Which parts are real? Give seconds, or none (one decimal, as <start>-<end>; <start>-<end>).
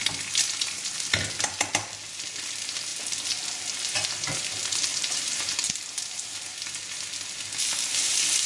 0.0-4.9; 6.4-8.5